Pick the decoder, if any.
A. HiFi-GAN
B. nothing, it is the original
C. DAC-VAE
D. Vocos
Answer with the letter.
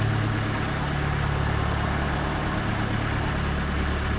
B